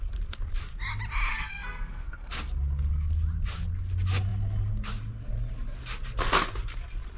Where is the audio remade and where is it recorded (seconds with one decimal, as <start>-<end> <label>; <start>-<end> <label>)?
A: 0.0-1.3 recorded; 1.3-2.3 remade; 2.3-7.2 recorded